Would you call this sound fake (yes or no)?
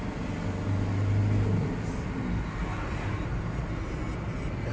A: no